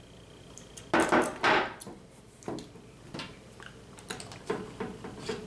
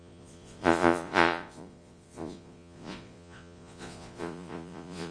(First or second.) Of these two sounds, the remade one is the second